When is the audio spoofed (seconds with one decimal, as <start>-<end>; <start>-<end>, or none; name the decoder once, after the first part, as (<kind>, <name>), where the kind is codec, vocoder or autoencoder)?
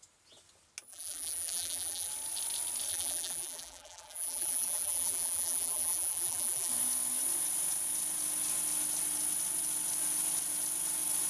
0.9-2.1 (vocoder, BigVGAN v2); 2.9-6.7